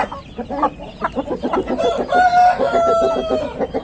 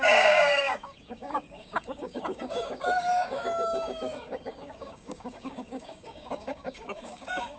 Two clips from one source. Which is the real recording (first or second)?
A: first